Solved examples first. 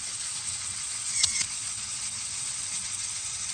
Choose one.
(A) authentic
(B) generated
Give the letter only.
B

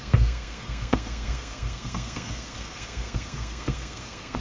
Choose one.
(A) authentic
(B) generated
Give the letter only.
B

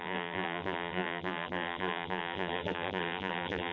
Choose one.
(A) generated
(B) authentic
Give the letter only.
A